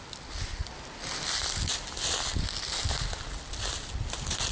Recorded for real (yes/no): yes